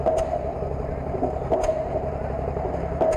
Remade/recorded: remade